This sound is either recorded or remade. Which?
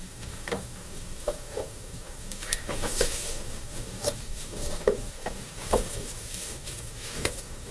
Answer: remade